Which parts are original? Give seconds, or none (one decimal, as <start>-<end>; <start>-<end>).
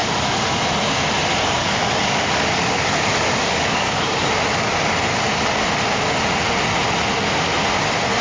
0.6-1.6; 4.3-8.2